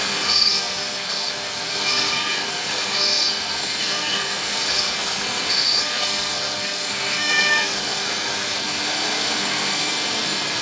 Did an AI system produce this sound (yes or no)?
yes